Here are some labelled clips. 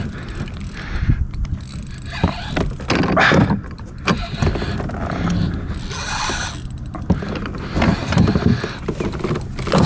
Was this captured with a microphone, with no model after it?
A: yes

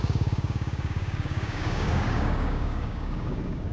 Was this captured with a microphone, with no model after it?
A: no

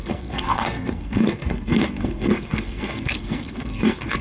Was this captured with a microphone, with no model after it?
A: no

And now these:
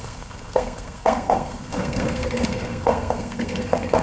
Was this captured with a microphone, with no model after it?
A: no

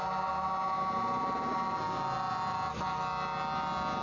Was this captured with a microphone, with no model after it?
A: yes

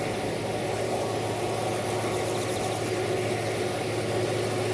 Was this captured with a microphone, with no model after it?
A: yes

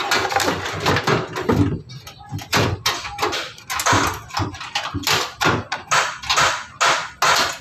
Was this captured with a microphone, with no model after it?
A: yes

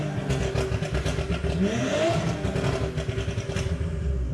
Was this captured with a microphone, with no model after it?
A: yes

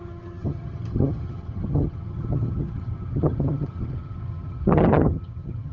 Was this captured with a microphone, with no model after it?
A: no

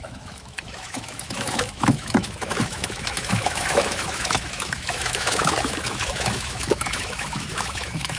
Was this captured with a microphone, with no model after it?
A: no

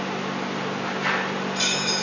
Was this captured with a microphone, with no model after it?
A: yes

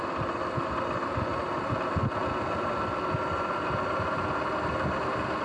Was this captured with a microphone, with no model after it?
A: yes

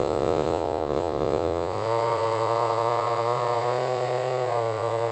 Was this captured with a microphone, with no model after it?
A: no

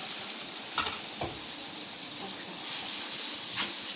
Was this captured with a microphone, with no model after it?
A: yes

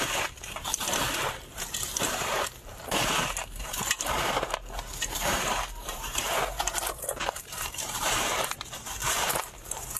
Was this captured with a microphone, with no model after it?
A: no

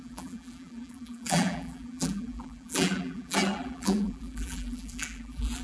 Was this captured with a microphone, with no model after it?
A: no